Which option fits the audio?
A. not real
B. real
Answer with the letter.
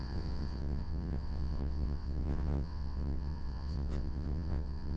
A